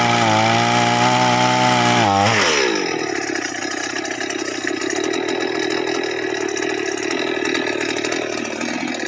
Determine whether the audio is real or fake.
real